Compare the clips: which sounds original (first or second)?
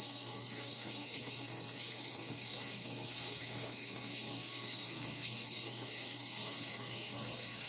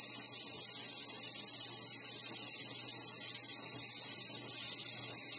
second